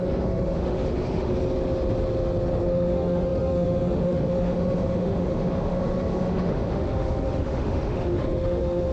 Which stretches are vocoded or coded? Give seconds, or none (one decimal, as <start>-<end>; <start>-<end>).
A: 0.0-1.3; 2.6-8.9